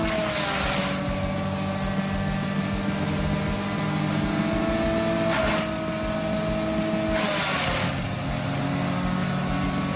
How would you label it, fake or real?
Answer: real